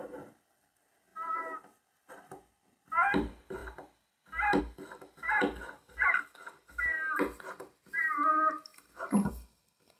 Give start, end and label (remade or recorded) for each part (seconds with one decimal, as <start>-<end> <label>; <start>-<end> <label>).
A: 0.0-10.0 recorded